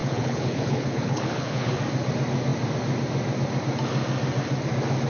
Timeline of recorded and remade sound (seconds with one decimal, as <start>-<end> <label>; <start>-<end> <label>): 0.0-1.8 remade; 1.8-5.1 recorded